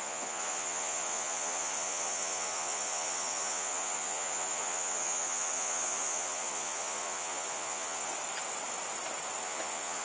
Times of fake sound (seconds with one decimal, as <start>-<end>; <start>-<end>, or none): 0.0-8.1; 9.4-10.0